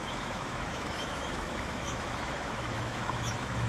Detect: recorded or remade remade